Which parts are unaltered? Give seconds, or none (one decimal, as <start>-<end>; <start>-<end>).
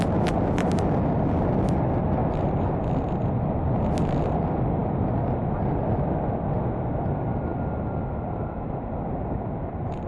0.0-10.1